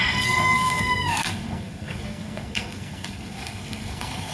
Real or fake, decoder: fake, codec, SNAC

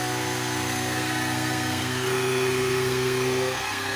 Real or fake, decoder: fake, codec, SNAC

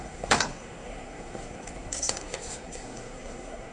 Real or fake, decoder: fake, codec, SNAC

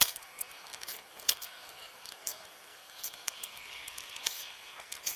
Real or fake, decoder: fake, codec, SNAC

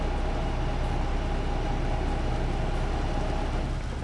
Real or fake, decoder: real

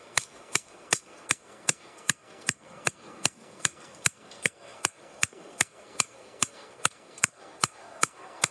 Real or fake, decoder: fake, codec, SNAC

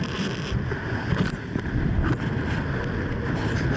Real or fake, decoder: real